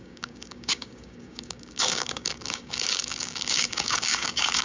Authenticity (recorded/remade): remade